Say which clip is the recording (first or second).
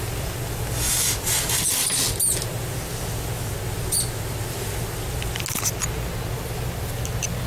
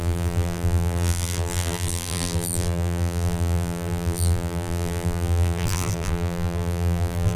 first